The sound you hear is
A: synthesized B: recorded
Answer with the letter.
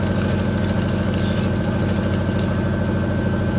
B